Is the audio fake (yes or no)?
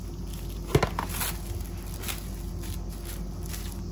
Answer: no